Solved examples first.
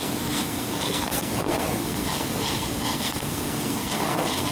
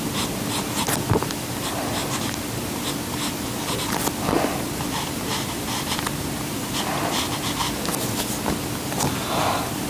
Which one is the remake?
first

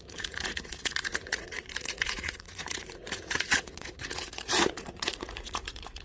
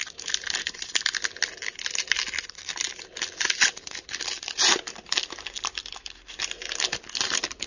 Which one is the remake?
first